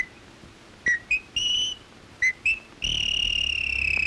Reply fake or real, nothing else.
real